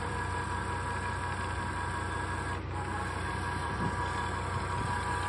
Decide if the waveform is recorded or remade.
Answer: remade